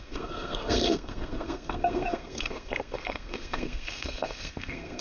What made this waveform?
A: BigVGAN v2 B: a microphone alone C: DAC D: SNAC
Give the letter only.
D